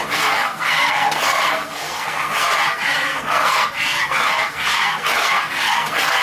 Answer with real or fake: fake